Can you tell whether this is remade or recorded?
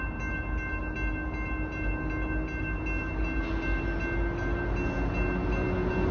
recorded